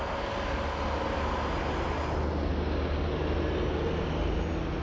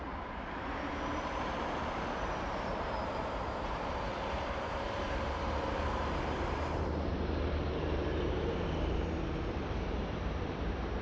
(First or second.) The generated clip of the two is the second